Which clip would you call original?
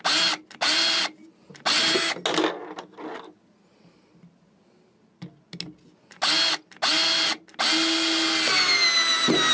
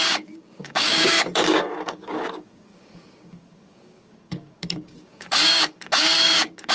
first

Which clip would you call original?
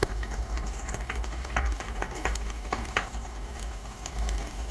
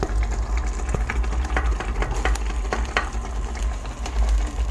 second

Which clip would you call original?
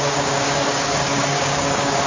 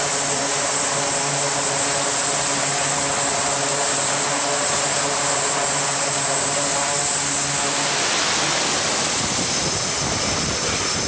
second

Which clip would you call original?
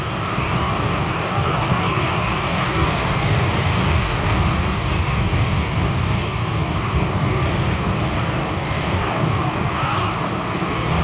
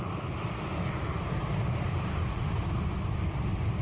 second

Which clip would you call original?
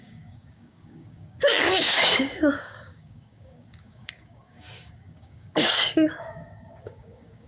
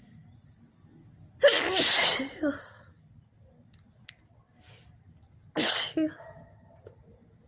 second